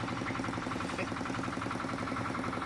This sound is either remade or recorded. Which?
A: remade